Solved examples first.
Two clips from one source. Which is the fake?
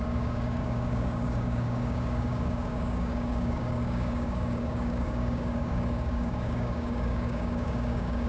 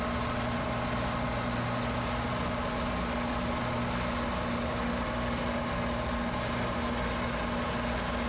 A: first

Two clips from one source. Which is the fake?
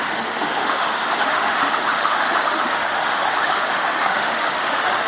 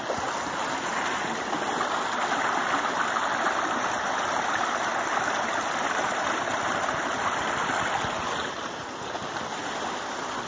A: first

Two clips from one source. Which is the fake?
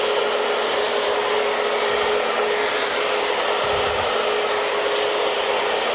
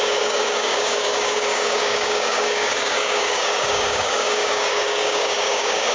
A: second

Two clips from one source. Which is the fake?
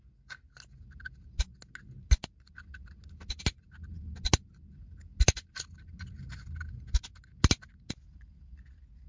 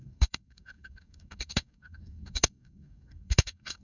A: second